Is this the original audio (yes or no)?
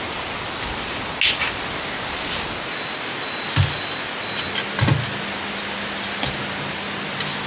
yes